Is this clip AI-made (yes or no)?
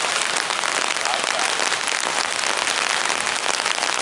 no